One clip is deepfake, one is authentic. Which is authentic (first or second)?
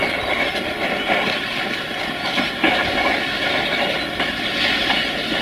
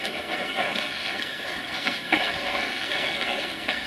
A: first